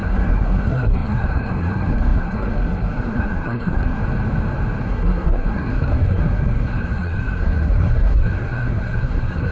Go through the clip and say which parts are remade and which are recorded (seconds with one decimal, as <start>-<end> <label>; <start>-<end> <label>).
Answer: 0.0-4.0 remade; 4.0-4.8 recorded; 4.8-9.5 remade